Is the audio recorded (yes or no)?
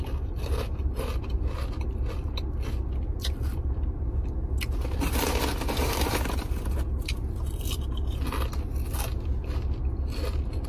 yes